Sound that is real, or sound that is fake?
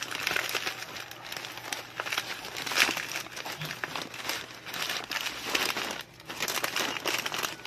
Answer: real